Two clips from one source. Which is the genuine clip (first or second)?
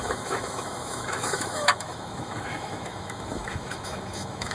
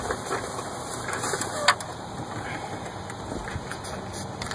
second